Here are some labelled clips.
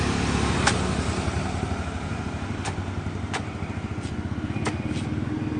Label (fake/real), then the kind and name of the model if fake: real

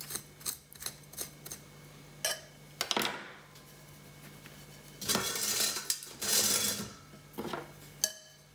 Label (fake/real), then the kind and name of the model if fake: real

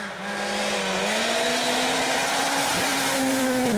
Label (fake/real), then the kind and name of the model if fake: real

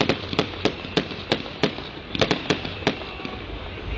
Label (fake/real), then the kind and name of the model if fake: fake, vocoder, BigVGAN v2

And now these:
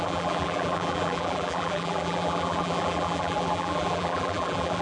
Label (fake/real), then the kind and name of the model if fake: fake, vocoder, BigVGAN v2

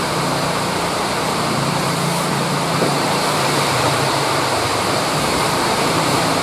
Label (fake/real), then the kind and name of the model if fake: fake, vocoder, BigVGAN v2